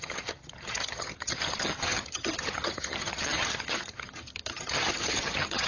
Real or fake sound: fake